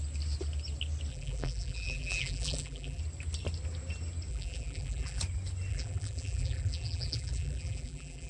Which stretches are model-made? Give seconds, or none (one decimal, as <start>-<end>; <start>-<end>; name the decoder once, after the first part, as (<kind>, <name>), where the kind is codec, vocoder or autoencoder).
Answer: 1.1-3.0 (vocoder, BigVGAN v2); 4.3-5.2; 5.7-8.3